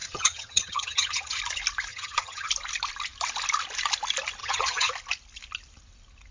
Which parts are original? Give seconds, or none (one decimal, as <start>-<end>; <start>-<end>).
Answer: 1.4-1.9; 2.5-4.4; 4.9-6.3